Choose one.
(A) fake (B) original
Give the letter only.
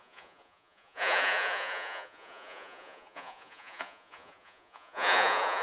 A